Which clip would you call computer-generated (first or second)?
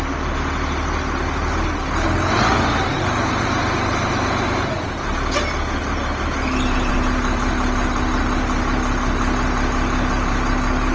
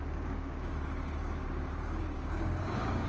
second